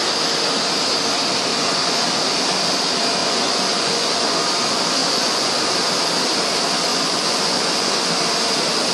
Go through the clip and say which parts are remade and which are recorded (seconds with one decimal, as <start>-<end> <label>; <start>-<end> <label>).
0.0-1.5 recorded; 1.5-2.1 remade; 2.1-3.2 recorded; 3.2-4.4 remade; 4.4-5.0 recorded; 5.0-5.5 remade; 5.5-6.9 recorded; 6.9-8.2 remade; 8.2-8.9 recorded